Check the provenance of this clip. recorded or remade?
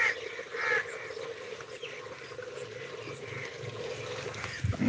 recorded